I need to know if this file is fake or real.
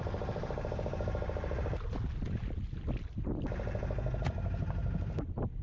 real